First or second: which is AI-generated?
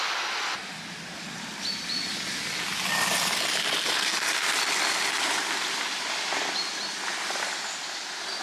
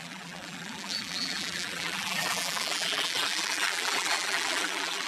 second